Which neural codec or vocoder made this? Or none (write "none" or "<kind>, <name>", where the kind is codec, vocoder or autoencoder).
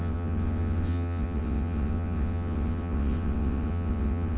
vocoder, WaveNeXt